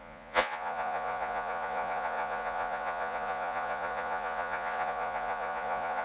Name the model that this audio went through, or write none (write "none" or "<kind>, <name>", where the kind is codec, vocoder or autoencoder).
vocoder, Vocos